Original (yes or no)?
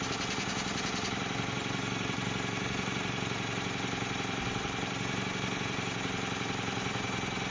no